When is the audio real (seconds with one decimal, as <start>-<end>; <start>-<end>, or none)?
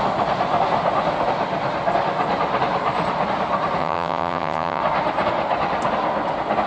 0.0-3.8; 4.8-6.7